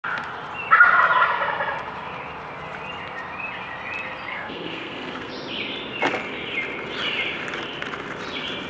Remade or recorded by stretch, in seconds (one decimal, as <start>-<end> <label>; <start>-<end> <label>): 0.0-4.3 recorded; 4.3-5.3 remade; 5.3-8.7 recorded

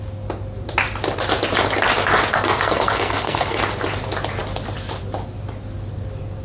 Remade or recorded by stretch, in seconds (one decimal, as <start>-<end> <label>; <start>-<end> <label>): 0.0-2.3 recorded; 2.3-3.6 remade; 3.6-6.4 recorded

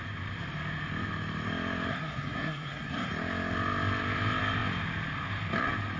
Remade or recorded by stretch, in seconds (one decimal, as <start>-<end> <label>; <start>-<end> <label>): 0.0-1.9 recorded; 1.9-3.1 remade; 3.1-6.0 recorded

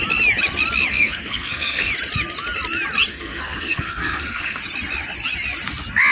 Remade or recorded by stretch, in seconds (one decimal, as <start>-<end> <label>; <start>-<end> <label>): 0.0-0.9 recorded; 0.9-1.9 remade; 1.9-3.1 recorded; 3.1-4.6 remade; 4.6-6.1 recorded